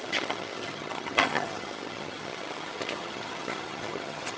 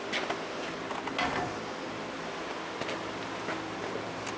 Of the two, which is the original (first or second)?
second